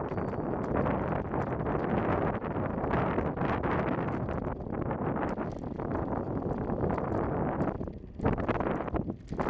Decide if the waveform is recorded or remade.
recorded